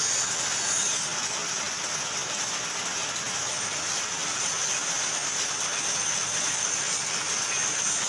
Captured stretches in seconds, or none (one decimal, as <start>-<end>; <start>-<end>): 0.0-8.1